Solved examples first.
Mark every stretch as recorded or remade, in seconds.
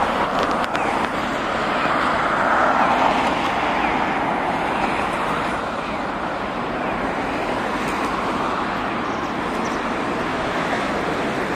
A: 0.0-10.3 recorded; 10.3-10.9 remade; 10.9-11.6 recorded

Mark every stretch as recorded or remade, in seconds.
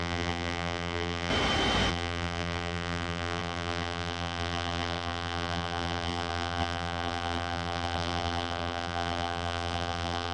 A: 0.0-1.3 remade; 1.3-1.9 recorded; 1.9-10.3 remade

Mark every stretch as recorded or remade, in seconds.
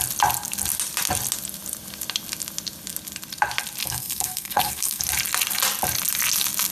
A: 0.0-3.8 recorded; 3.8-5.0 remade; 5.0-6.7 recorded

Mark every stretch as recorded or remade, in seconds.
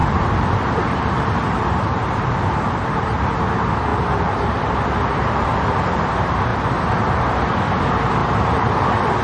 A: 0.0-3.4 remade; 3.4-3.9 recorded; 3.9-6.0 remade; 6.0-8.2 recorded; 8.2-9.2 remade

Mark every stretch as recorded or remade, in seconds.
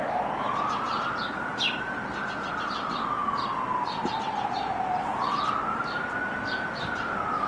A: 0.0-7.5 recorded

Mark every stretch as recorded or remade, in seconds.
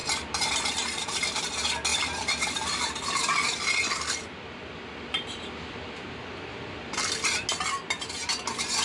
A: 0.0-1.5 remade; 1.5-1.9 recorded; 1.9-7.0 remade; 7.0-8.8 recorded